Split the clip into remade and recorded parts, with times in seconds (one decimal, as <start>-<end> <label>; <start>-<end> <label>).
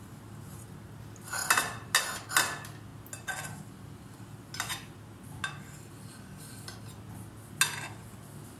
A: 0.0-8.6 recorded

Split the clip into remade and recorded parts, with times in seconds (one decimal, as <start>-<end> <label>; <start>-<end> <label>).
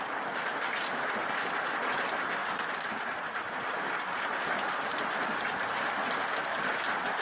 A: 0.0-2.4 recorded; 2.4-5.6 remade; 5.6-7.2 recorded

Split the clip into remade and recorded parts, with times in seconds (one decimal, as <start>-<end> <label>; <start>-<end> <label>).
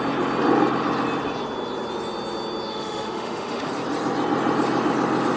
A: 0.0-2.7 recorded; 2.7-3.7 remade; 3.7-5.4 recorded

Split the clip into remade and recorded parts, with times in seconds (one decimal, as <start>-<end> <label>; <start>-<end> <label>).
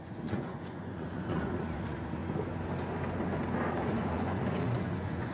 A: 0.0-2.2 remade; 2.2-3.7 recorded; 3.7-5.3 remade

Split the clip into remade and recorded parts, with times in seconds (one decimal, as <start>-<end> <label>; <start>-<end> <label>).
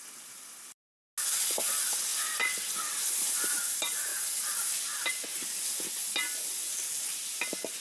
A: 0.0-7.8 recorded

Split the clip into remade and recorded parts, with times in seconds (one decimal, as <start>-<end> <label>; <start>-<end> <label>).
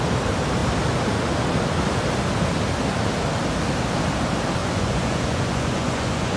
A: 0.0-4.6 recorded; 4.6-6.4 remade